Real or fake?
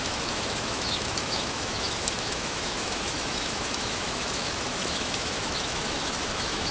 fake